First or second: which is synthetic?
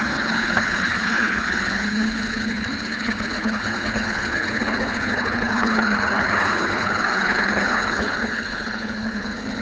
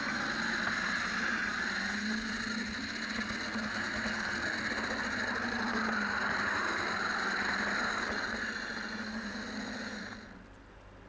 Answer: first